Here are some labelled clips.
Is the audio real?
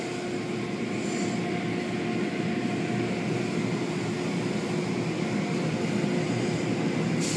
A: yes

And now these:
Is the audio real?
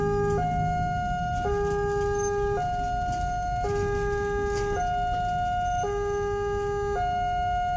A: yes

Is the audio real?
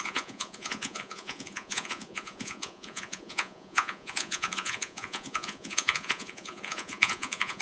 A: no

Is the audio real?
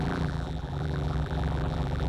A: no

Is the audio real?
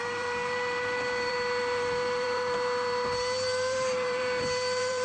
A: no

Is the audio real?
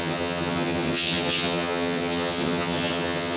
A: no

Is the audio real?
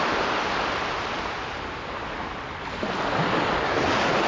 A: yes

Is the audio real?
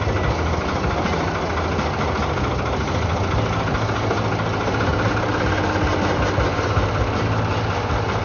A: yes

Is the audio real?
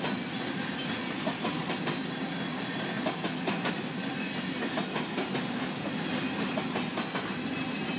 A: yes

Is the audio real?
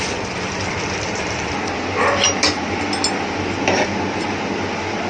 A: yes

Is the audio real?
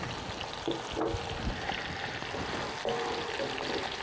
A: yes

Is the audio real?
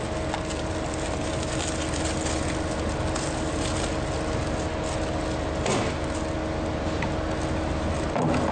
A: yes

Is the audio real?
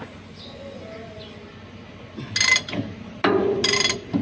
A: yes